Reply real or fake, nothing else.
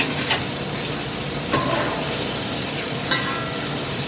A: real